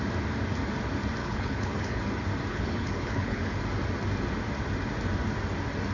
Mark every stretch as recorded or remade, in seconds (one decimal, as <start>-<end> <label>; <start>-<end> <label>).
0.0-1.2 recorded; 1.2-2.0 remade; 2.0-2.5 recorded; 2.5-3.5 remade; 3.5-5.9 recorded